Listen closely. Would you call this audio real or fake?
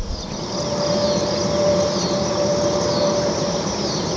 real